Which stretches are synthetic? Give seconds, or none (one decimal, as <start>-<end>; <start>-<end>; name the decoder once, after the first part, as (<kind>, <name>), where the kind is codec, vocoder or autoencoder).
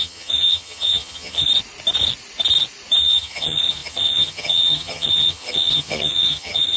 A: 0.0-1.5 (vocoder, HiFi-GAN); 3.0-6.8